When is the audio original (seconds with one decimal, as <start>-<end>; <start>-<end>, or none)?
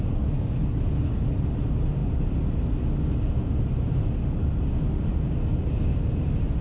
0.0-6.6